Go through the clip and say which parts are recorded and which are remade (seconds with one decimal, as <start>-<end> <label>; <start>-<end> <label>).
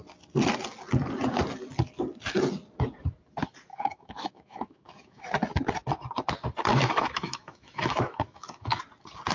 0.0-3.7 recorded; 3.7-5.2 remade; 5.2-6.7 recorded; 6.7-8.8 remade; 8.8-9.3 recorded